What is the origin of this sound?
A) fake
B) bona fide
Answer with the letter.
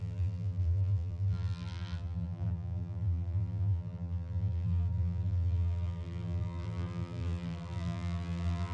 A